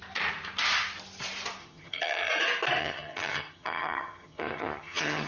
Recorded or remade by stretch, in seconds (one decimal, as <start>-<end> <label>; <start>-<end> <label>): 0.0-1.6 recorded; 1.6-2.3 remade; 2.3-2.8 recorded; 2.8-5.3 remade